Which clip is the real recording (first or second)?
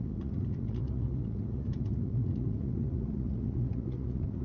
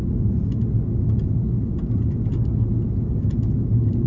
second